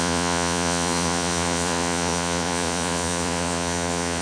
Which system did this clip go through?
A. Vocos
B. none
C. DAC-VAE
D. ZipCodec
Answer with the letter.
A